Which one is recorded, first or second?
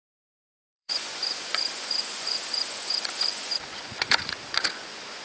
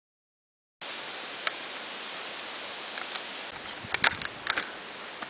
second